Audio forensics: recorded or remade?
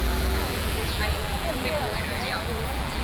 remade